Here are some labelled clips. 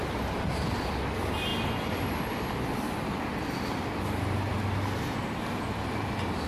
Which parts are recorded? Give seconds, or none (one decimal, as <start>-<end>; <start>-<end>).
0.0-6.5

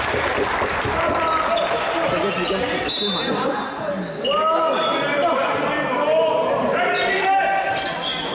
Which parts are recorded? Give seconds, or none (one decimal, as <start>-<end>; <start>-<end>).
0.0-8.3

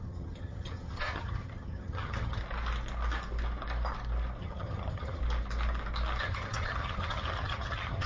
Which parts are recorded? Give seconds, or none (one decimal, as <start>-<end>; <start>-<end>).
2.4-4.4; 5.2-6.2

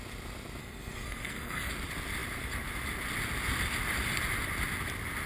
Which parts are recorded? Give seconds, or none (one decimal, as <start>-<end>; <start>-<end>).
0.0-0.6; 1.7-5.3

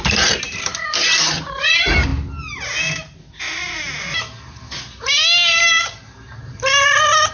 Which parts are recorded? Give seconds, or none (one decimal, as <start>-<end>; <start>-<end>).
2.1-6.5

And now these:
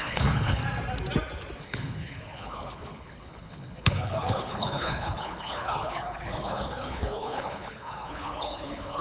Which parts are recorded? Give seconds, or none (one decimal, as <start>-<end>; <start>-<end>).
0.6-1.6